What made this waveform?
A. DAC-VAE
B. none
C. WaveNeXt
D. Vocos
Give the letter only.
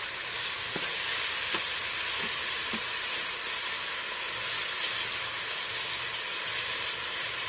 B